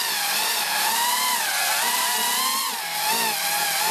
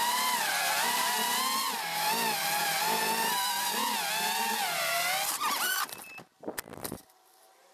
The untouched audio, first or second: second